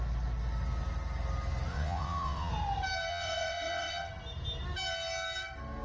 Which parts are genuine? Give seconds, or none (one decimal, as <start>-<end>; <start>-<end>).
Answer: 0.0-1.7; 2.5-3.1; 4.1-5.8